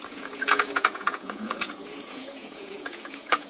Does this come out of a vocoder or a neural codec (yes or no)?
yes